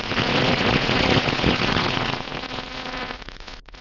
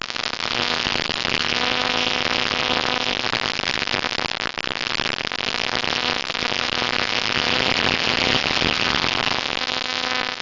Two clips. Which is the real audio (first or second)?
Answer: second